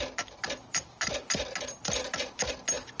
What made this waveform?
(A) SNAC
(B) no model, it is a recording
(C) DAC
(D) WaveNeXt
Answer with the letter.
B